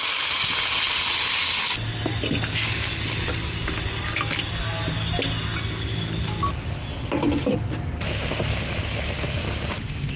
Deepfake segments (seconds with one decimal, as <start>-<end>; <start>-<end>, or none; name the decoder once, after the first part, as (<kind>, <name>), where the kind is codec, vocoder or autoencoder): 9.4-10.2 (codec, DAC)